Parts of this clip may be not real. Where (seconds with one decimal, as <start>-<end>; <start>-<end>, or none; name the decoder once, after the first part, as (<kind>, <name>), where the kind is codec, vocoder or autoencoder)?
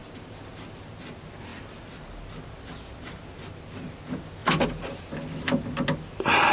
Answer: 4.4-5.0 (vocoder, BigVGAN v2)